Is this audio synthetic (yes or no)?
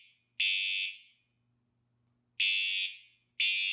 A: no